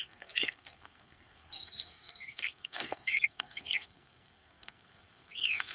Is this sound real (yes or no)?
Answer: no